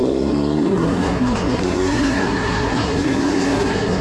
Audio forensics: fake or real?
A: fake